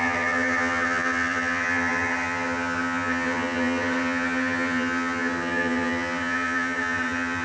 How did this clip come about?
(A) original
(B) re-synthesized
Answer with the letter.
B